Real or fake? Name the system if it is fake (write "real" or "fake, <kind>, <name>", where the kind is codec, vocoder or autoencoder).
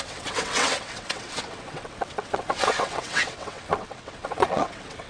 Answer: fake, vocoder, WaveNeXt